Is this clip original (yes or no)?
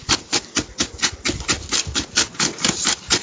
yes